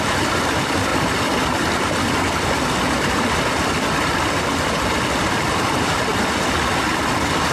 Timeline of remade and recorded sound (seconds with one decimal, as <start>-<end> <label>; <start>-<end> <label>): 0.0-6.1 remade; 6.1-7.0 recorded; 7.0-7.5 remade